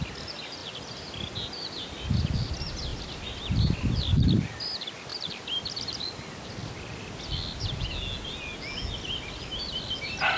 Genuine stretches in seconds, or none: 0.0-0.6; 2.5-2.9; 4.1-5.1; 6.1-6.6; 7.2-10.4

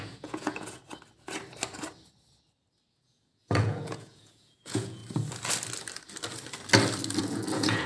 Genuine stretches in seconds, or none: 0.8-2.9; 5.0-7.2

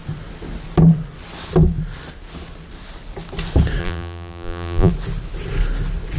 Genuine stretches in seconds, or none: 0.0-3.8; 4.9-6.2

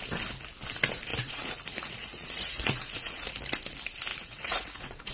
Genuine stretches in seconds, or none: 0.0-1.1; 3.3-4.1

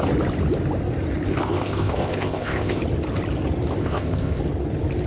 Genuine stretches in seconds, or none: 0.0-1.3; 2.8-3.8; 4.4-5.1

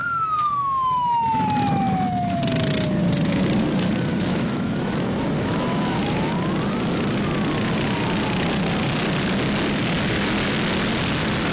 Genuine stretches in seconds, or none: 2.4-4.1; 6.3-11.5

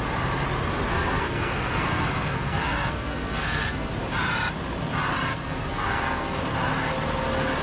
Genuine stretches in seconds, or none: 0.0-0.9; 3.9-5.3; 6.4-7.6